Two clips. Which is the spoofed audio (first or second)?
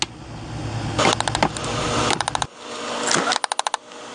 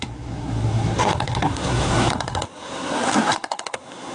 second